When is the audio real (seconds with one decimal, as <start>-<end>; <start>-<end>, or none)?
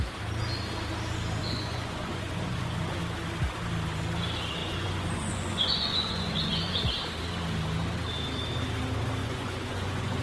0.0-1.4; 3.0-4.6; 6.8-9.2